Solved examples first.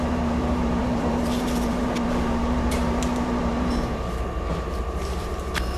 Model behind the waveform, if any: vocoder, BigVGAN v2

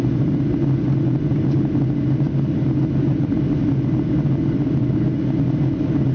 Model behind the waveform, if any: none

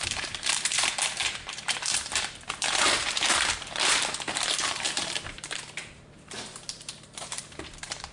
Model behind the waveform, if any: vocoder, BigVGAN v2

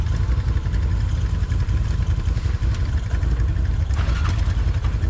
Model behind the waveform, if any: none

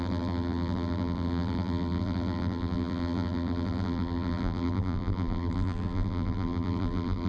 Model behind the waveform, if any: vocoder, BigVGAN v2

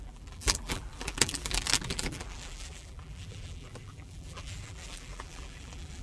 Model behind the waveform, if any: vocoder, BigVGAN v2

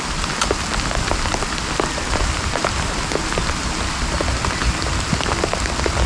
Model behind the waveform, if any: none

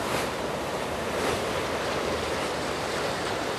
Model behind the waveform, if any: vocoder, BigVGAN v2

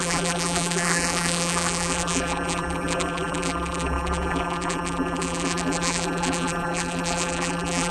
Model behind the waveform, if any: vocoder, BigVGAN v2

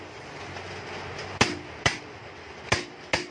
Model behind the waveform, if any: none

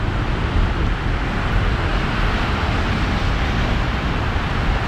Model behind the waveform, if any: vocoder, BigVGAN v2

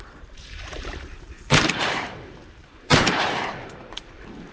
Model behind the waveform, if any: vocoder, BigVGAN v2